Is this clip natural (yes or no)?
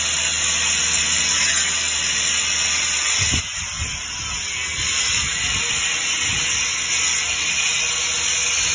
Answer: yes